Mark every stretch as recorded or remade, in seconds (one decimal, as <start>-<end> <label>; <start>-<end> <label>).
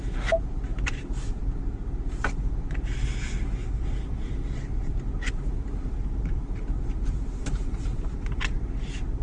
0.0-0.7 recorded; 0.7-1.4 remade; 1.4-3.6 recorded; 3.6-8.5 remade; 8.5-9.2 recorded